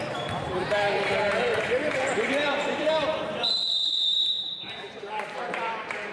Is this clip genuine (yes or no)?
no